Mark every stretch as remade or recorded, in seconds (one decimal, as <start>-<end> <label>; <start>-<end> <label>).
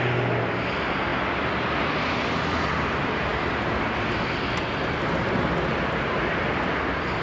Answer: 0.0-7.2 recorded